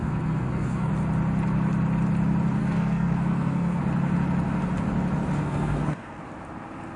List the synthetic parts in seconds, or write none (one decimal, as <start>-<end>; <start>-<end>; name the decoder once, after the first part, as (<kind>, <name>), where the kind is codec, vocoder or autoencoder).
0.0-0.9 (codec, SNAC); 2.6-3.8; 5.4-6.2